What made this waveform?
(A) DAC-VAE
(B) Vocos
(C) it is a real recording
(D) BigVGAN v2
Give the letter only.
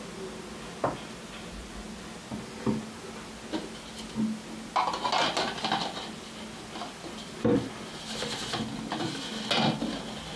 C